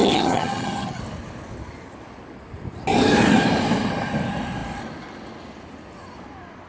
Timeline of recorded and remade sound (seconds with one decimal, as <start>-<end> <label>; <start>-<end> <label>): 0.0-1.0 remade; 1.0-6.7 recorded